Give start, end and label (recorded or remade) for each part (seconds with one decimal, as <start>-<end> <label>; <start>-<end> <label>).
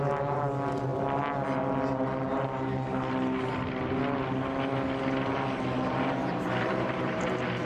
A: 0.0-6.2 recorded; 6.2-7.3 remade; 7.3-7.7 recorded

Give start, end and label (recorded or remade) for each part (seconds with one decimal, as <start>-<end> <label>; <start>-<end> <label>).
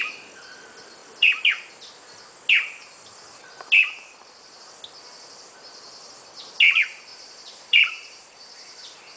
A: 0.0-1.0 recorded; 1.0-1.7 remade; 1.7-3.8 recorded; 3.8-4.6 remade; 4.6-7.1 recorded; 7.1-9.2 remade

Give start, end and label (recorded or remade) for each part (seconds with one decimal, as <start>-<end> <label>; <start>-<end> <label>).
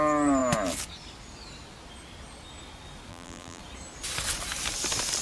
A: 0.0-3.1 recorded; 3.1-3.6 remade; 3.6-5.2 recorded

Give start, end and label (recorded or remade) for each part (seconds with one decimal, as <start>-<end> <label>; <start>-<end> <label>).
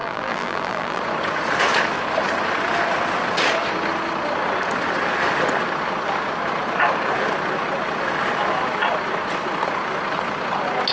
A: 0.0-1.0 remade; 1.0-10.9 recorded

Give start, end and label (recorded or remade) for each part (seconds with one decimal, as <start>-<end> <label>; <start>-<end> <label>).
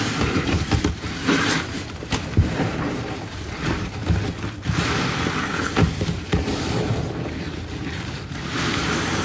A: 0.0-4.0 remade; 4.0-5.4 recorded; 5.4-9.2 remade